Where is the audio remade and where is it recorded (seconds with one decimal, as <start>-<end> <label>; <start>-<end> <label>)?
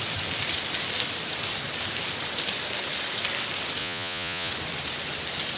0.0-3.8 recorded; 3.8-4.5 remade; 4.5-5.6 recorded